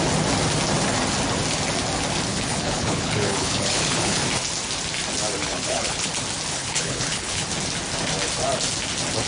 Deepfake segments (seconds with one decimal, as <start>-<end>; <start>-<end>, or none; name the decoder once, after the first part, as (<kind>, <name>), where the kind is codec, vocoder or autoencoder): 2.3-4.2 (codec, HILCodec); 5.4-6.1; 6.6-7.5